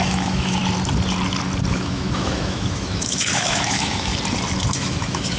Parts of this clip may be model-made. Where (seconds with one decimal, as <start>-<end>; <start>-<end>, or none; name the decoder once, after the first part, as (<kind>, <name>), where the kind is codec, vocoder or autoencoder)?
0.0-0.6 (autoencoder, DAC-VAE); 1.7-4.1; 4.7-5.4